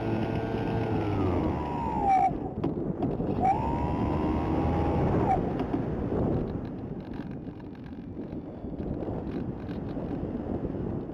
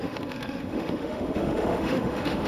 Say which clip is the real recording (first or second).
first